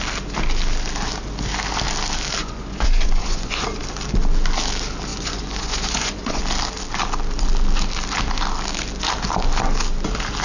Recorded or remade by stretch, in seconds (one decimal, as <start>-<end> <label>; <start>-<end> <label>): 0.0-2.4 recorded; 2.4-3.8 remade; 3.8-5.1 recorded; 5.1-6.4 remade; 6.4-10.4 recorded